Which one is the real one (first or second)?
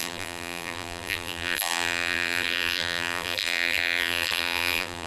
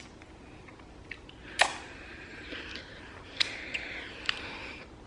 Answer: second